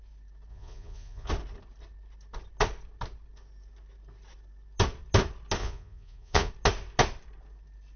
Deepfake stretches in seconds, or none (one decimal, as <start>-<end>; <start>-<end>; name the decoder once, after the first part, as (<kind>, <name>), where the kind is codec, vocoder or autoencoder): 0.5-1.3 (vocoder, Vocos); 5.6-6.5